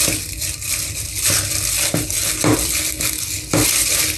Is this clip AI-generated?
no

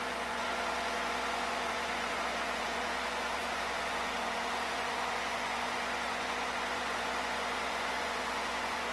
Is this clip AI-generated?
yes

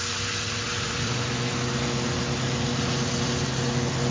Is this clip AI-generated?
no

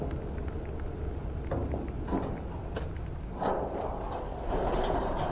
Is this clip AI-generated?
no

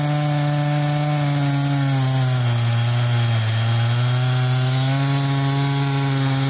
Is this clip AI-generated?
no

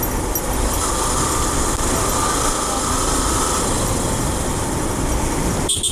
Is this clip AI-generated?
no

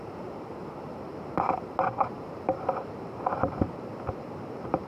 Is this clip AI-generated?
yes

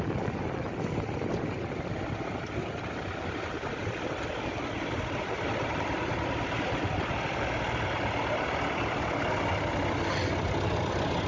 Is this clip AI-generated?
no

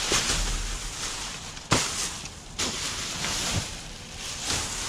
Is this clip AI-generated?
no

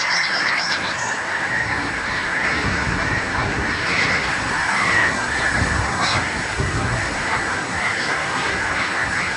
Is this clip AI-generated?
yes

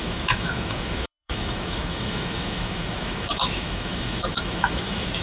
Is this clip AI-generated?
yes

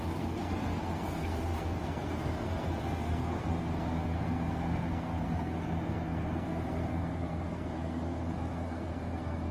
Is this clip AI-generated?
yes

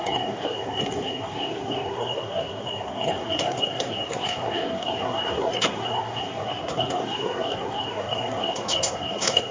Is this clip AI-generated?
yes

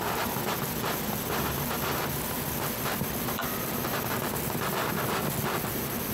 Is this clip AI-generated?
no